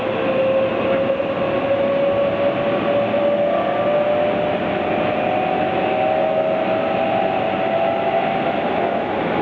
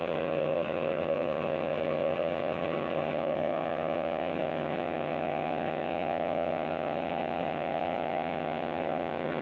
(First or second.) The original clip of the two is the first